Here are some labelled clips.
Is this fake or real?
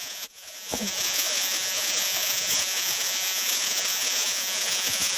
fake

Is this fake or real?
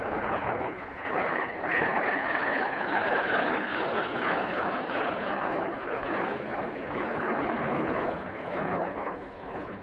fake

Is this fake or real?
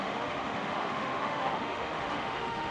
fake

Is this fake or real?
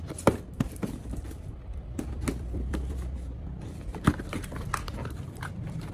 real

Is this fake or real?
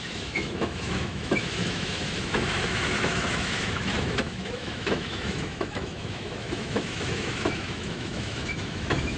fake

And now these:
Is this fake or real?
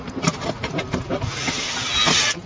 real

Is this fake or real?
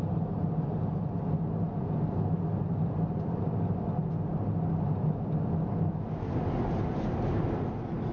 real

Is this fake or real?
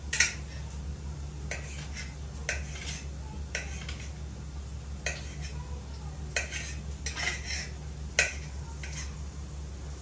real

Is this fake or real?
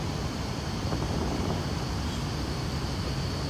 real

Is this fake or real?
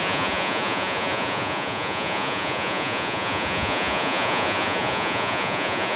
fake